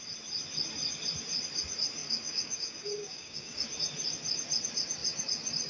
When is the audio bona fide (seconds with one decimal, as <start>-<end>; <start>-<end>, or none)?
0.0-2.0; 3.7-5.7